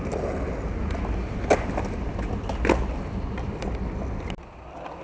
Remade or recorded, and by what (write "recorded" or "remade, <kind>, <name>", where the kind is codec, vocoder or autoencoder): recorded